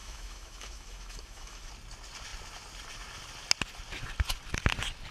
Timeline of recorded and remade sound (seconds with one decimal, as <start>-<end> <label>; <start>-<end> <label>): 0.0-1.7 remade; 1.7-5.1 recorded